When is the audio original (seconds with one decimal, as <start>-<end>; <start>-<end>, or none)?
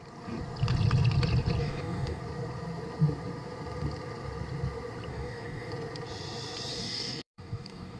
0.0-1.6; 2.2-5.1; 5.7-6.7